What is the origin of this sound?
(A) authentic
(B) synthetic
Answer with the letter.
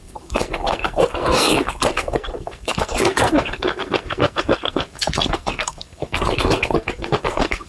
B